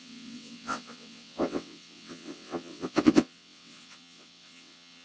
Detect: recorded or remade remade